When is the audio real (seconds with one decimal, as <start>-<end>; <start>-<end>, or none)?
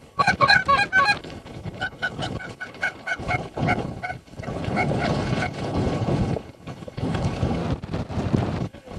0.6-1.2; 7.6-8.6